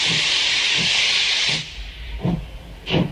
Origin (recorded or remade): recorded